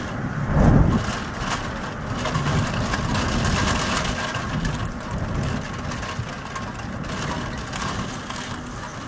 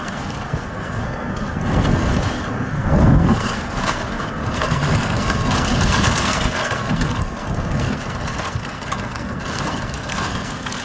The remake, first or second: second